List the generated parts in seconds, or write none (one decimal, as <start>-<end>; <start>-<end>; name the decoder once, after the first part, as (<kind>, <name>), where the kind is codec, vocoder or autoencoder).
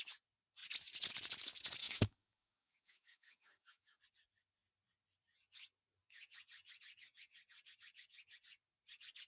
1.8-4.0 (codec, DAC)